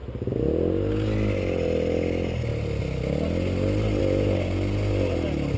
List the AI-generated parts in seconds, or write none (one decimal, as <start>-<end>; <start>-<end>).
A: none